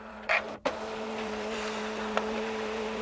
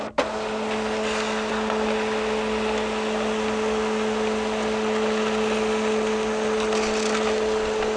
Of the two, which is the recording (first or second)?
second